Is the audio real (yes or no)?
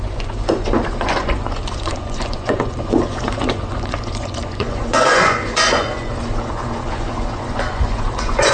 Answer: no